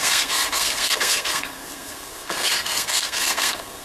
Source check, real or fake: fake